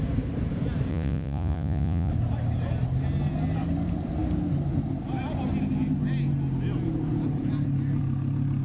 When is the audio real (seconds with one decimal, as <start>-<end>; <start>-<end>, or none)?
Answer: 0.0-0.9; 2.1-8.6